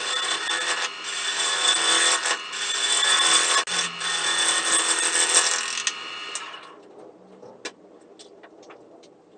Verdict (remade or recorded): recorded